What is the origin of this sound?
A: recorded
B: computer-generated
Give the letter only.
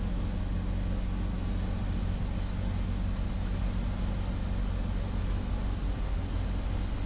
A